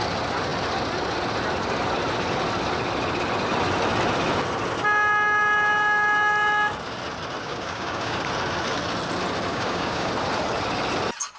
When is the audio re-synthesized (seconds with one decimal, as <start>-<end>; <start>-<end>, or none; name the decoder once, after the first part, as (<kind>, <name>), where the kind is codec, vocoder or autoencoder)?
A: 7.4-8.2 (codec, DAC); 9.5-10.1